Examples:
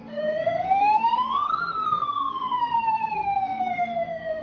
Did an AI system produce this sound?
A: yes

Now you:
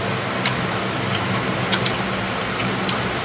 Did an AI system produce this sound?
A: no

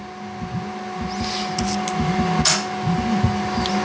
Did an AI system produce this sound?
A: no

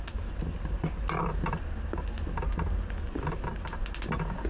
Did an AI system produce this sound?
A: no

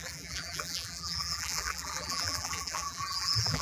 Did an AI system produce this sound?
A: yes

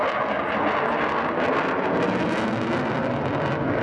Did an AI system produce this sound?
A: no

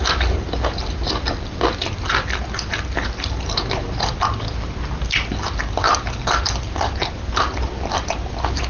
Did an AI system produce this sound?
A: no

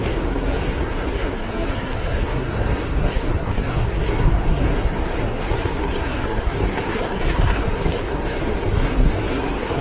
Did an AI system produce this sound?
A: yes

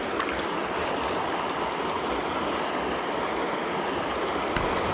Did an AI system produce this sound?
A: no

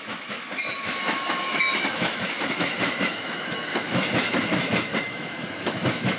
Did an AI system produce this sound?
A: yes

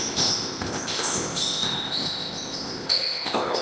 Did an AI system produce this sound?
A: yes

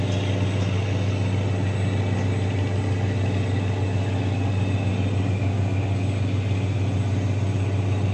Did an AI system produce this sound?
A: no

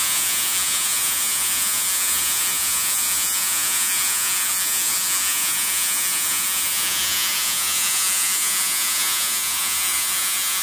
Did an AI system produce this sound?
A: yes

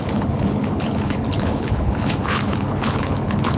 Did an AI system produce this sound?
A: yes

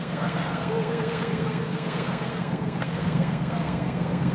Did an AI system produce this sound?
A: yes